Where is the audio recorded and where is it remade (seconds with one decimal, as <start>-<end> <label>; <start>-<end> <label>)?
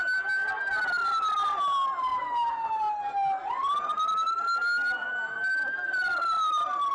0.0-6.9 recorded